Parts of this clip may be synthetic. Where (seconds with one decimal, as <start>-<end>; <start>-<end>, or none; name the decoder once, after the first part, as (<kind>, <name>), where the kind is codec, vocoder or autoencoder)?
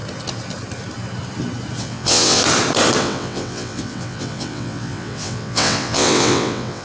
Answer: 1.8-2.4 (vocoder, WaveNeXt); 3.0-6.8